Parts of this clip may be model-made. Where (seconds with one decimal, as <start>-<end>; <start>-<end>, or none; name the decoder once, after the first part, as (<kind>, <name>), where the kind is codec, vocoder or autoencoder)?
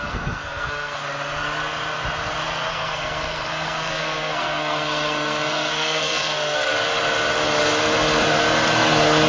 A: 0.0-1.0 (codec, SNAC); 2.7-6.7